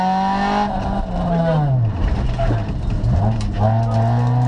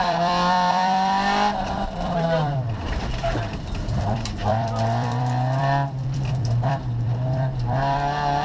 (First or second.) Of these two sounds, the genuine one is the first